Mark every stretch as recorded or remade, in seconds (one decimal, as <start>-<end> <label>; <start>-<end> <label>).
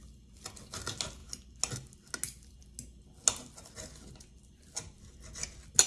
0.0-5.9 recorded